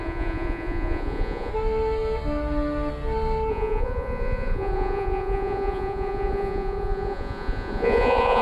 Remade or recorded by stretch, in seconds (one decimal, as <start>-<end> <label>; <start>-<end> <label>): 0.0-1.5 remade; 1.5-3.5 recorded; 3.5-8.4 remade